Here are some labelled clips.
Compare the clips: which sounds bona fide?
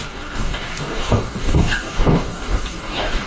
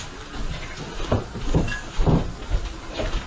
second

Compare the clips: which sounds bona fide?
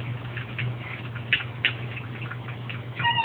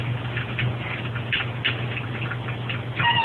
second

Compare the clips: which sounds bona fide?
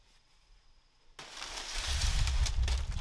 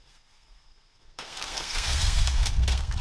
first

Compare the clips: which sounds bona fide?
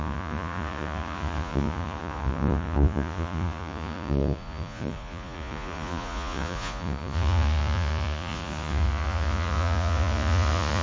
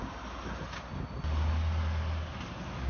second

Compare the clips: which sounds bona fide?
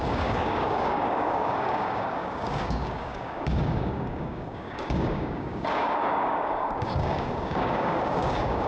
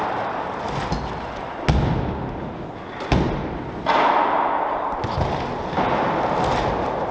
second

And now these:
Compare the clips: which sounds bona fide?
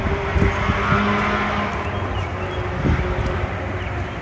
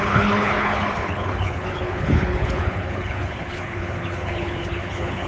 first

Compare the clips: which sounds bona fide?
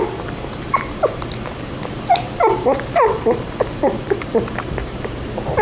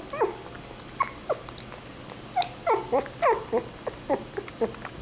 second